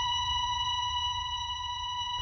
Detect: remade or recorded remade